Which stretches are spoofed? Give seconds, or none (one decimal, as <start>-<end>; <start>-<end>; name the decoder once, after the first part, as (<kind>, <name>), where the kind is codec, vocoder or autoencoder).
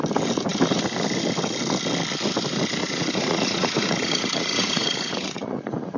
2.8-6.0 (vocoder, Vocos)